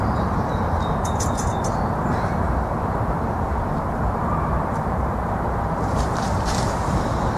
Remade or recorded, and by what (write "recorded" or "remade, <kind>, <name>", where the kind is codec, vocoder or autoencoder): remade, vocoder, BigVGAN v2